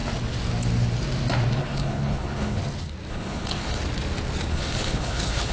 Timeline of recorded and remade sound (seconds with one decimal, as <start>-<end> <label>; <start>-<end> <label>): 0.0-1.6 recorded; 1.6-2.6 remade; 2.6-3.1 recorded; 3.1-3.8 remade; 3.8-4.5 recorded; 4.5-5.5 remade